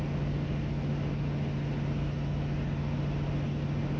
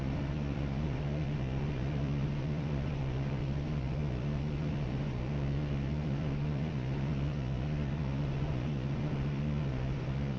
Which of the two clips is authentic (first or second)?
first